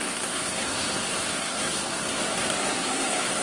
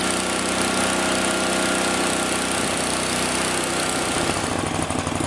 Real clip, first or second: second